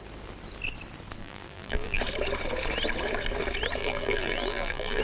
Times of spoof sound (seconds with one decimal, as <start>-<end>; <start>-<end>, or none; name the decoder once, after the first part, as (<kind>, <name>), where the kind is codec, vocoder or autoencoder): 1.2-2.0 (vocoder, BigVGAN v2); 3.8-5.0